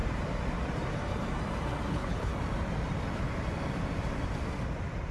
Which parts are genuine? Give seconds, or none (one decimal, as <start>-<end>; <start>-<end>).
0.0-1.9; 2.3-5.1